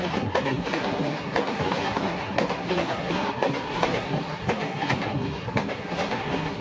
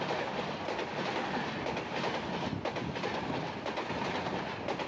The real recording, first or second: second